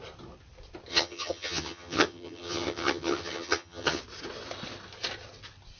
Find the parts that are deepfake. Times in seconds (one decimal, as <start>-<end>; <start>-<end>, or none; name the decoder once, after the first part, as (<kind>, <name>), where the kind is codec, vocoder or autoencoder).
0.9-4.0 (vocoder, HiFi-GAN)